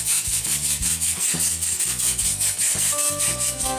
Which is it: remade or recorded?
remade